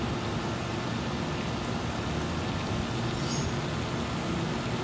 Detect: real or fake real